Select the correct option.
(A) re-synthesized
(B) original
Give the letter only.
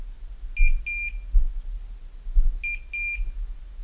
B